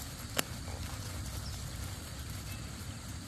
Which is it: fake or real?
real